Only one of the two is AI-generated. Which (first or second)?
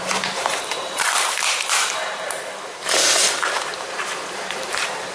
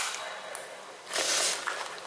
first